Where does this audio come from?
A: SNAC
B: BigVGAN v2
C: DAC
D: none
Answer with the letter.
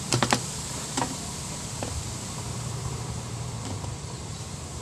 B